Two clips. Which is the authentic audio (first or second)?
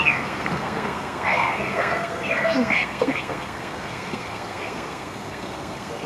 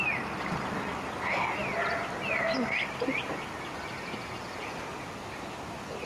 second